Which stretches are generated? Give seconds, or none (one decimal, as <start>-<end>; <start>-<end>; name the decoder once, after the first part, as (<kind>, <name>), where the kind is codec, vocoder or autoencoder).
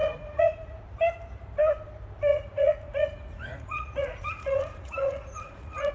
0.0-0.8 (vocoder, Vocos); 2.3-5.9